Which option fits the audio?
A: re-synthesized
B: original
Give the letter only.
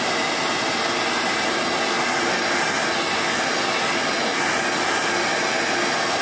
B